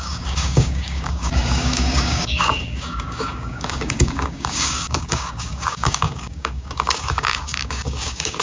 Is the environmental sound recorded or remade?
remade